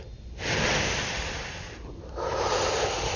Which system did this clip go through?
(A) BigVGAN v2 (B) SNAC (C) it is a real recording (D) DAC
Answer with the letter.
C